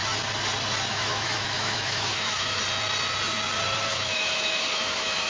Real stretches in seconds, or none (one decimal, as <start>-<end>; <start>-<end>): 0.0-0.9; 2.6-3.9

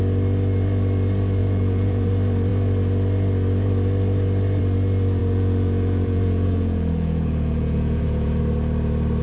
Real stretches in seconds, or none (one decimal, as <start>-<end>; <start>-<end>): 0.0-1.4; 2.1-5.2; 8.4-9.2

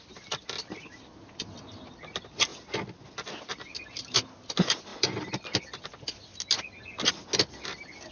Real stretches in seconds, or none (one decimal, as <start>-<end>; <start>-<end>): 0.0-8.1

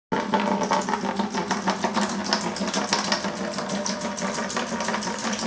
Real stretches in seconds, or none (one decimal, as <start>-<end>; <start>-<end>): 0.0-5.5

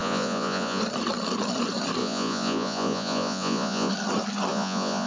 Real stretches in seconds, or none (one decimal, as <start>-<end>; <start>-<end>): 0.8-2.0; 3.9-4.5

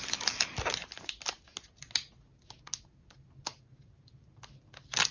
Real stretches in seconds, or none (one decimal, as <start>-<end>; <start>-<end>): 0.0-5.1